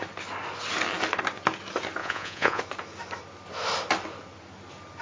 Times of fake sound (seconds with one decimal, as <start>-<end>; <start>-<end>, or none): 2.0-2.6